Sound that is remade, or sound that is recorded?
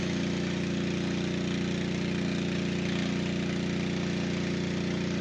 recorded